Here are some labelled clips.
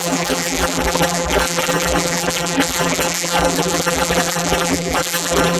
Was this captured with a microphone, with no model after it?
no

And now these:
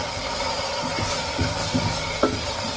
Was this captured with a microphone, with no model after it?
no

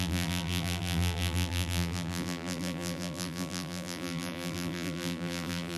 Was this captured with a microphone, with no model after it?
no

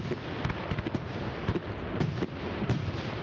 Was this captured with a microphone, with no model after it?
yes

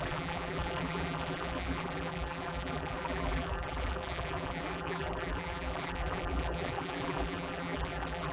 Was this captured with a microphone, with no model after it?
no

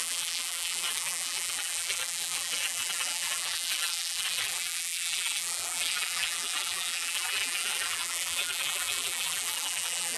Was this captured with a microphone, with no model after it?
no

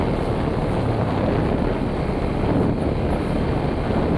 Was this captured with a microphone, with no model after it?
yes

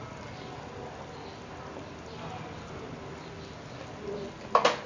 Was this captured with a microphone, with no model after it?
yes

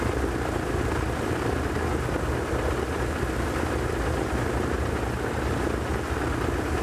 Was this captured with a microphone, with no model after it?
yes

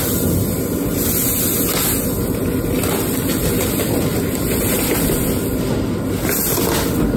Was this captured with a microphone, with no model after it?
yes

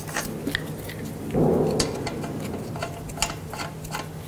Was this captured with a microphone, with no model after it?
yes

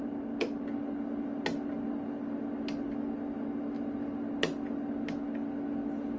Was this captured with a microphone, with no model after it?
yes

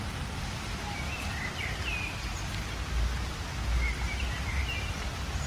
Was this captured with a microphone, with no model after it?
yes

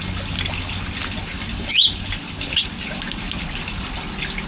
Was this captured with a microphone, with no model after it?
yes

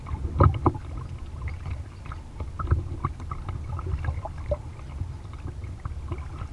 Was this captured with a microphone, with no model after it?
yes